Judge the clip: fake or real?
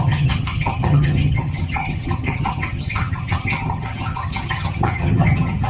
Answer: fake